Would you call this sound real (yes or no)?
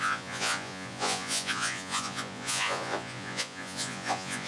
no